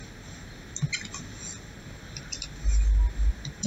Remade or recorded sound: recorded